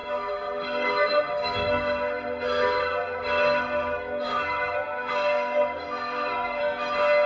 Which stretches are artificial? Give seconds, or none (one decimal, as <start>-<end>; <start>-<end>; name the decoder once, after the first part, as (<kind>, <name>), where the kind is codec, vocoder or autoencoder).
0.0-6.6 (codec, SNAC)